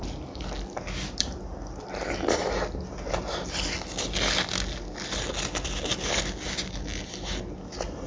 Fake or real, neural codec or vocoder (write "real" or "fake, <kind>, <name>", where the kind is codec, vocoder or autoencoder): real